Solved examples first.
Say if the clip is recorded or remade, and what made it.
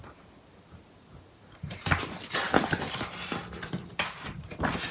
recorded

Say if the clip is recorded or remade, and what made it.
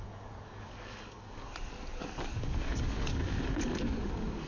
remade, codec, DAC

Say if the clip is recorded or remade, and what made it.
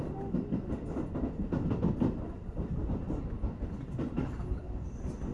recorded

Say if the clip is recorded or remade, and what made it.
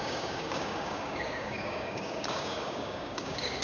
remade, codec, DAC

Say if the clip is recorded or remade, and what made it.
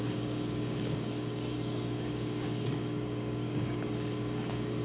remade, codec, DAC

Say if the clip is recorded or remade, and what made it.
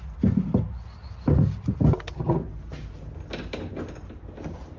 recorded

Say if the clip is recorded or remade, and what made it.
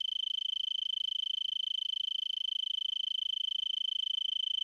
recorded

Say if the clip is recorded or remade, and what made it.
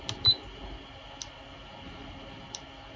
recorded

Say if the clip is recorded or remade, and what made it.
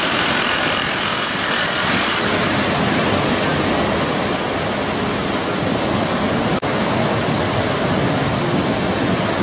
recorded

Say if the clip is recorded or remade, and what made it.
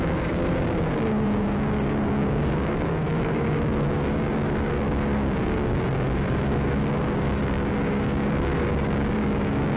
remade, codec, DAC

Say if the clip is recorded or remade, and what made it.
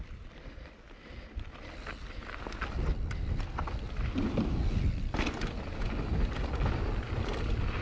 recorded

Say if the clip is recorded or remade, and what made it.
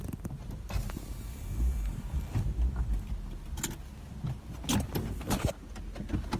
recorded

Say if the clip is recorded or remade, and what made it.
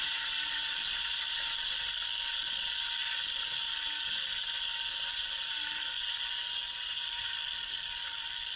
recorded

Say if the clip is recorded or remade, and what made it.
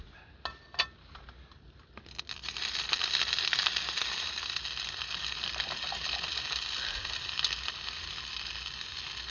recorded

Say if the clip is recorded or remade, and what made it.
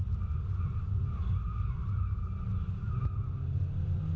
recorded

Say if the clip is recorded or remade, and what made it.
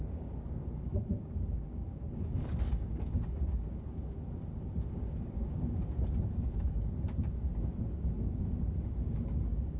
remade, codec, DAC